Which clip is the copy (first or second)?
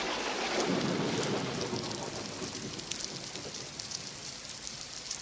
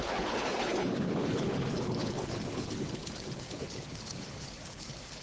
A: second